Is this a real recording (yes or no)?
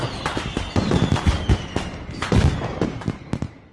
yes